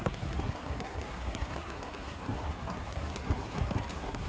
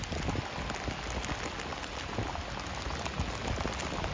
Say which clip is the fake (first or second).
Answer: first